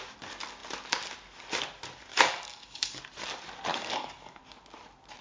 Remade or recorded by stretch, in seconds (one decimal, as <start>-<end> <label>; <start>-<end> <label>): 0.0-2.1 recorded; 2.1-3.0 remade; 3.0-3.7 recorded; 3.7-4.4 remade; 4.4-5.2 recorded